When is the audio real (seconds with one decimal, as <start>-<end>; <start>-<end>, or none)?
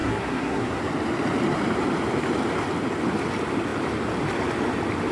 0.8-5.1